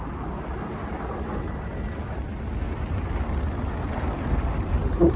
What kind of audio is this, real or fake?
real